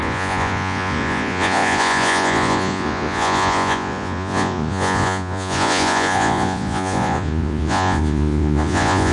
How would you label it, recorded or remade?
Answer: remade